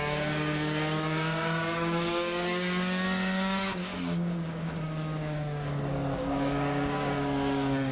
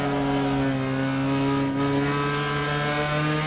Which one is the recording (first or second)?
second